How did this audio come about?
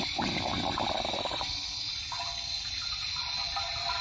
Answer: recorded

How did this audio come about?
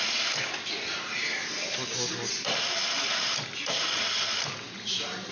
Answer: recorded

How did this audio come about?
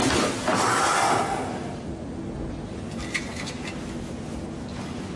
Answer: recorded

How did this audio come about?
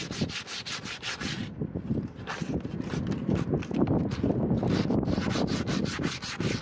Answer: recorded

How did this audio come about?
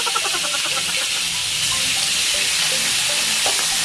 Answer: recorded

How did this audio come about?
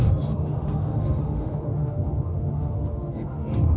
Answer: remade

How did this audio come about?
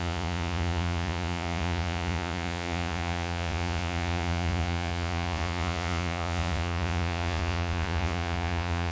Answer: remade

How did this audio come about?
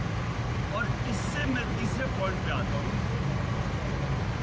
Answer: recorded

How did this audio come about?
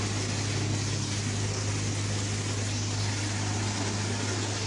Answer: recorded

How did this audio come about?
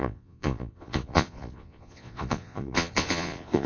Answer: remade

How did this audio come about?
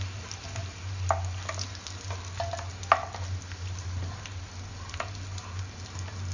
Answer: recorded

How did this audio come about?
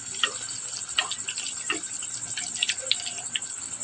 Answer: recorded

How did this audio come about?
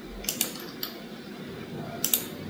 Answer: recorded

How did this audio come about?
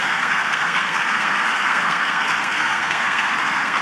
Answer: remade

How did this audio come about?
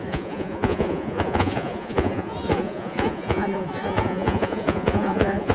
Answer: remade